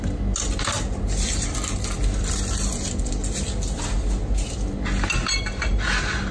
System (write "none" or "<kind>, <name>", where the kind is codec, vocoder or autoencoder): none